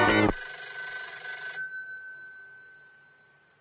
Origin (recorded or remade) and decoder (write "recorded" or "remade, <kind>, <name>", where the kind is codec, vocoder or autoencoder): recorded